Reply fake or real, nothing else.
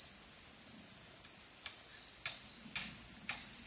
real